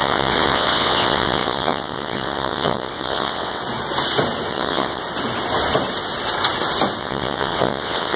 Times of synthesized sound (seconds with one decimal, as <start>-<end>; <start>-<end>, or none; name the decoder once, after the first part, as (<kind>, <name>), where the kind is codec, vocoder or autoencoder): 0.0-3.6 (vocoder, WaveNeXt); 4.5-5.0; 7.0-8.2